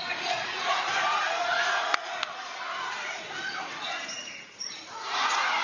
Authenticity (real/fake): fake